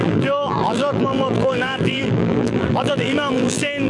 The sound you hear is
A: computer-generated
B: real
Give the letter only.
A